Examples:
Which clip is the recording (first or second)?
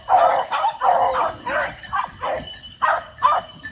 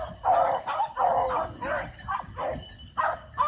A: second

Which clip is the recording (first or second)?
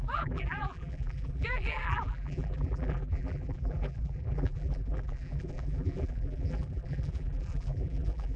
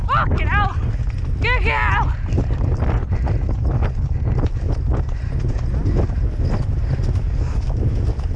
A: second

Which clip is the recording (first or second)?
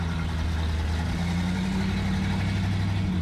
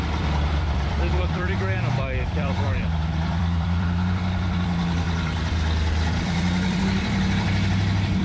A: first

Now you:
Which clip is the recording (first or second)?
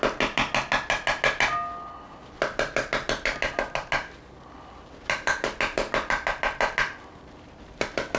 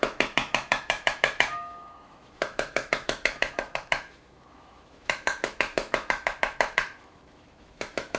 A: first